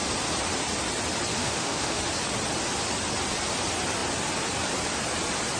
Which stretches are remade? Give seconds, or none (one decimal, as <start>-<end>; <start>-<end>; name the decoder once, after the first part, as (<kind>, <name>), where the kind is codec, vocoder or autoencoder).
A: 1.4-2.0 (autoencoder, DAC-VAE)